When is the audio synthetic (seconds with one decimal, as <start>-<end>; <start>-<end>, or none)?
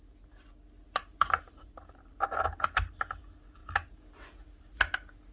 1.0-2.0